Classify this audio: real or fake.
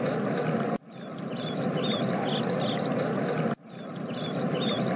real